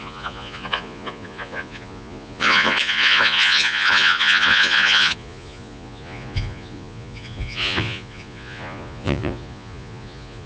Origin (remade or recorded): remade